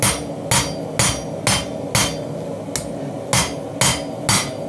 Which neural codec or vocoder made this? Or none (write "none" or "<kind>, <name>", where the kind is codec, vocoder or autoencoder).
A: none